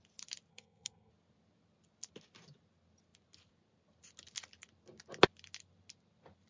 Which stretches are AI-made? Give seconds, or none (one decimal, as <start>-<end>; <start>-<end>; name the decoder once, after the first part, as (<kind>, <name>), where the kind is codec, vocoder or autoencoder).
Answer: 0.5-1.1 (codec, SNAC)